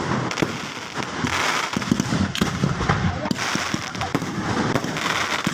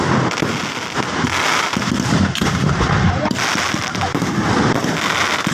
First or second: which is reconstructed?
first